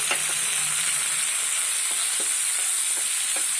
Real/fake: fake